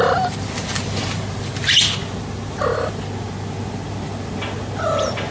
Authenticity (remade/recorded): recorded